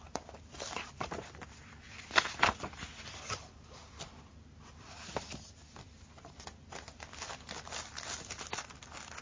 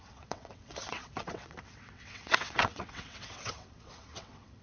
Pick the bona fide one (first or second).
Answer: first